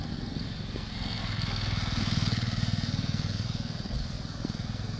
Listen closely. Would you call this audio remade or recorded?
remade